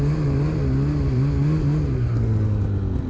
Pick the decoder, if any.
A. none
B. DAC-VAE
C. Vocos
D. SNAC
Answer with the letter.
A